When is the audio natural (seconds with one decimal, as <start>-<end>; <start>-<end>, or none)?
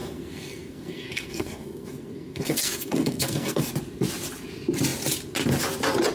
3.7-6.1